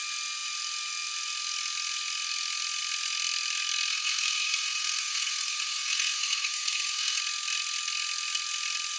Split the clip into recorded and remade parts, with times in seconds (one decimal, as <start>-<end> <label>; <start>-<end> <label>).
0.0-3.9 recorded; 3.9-7.2 remade; 7.2-9.0 recorded